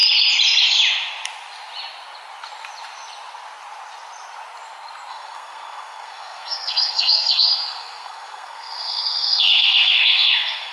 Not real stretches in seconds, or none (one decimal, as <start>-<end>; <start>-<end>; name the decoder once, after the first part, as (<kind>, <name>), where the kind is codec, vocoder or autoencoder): 5.1-10.7 (codec, SNAC)